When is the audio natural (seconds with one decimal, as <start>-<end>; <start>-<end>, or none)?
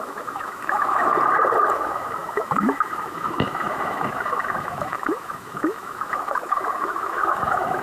1.1-1.7